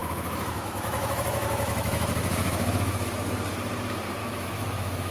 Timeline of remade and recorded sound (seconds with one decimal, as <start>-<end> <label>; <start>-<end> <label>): 0.0-3.1 remade; 3.1-4.2 recorded; 4.2-5.1 remade